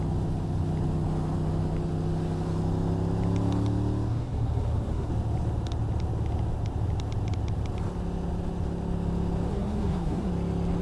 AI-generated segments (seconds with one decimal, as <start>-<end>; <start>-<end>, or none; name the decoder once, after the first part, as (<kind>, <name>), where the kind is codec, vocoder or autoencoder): 4.1-5.1 (codec, SNAC); 9.5-10.3